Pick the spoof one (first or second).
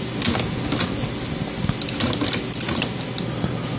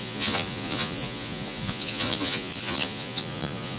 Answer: second